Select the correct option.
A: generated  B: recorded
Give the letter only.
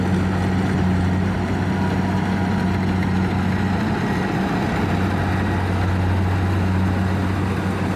B